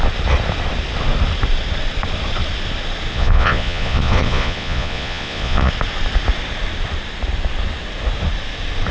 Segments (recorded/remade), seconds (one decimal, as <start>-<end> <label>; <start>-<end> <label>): 0.0-3.1 recorded; 3.1-5.7 remade; 5.7-8.9 recorded